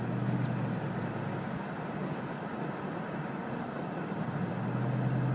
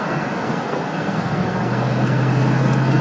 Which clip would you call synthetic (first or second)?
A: second